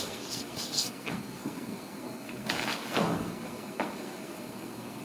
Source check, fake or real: fake